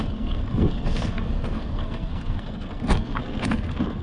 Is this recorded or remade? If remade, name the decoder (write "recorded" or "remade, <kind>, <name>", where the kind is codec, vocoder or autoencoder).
remade, codec, SNAC